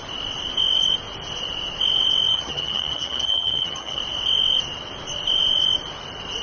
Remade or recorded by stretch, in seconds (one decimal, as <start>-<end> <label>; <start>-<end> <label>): 0.0-2.3 recorded; 2.3-4.0 remade; 4.0-6.4 recorded